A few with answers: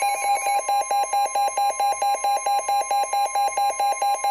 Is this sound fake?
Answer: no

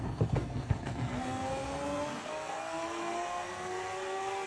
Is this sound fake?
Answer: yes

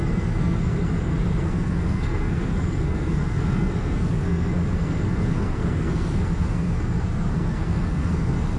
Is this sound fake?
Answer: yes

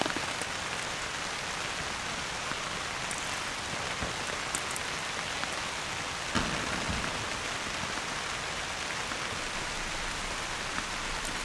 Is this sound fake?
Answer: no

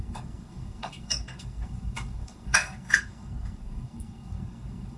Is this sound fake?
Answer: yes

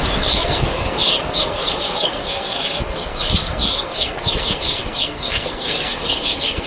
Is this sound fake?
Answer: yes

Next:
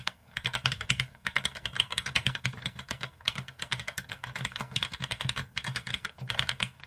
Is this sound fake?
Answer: yes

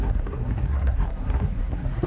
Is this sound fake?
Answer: yes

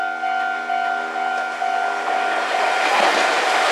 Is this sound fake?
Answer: no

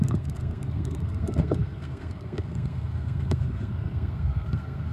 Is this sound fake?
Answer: yes